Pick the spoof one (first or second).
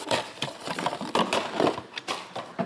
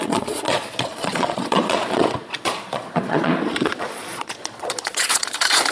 second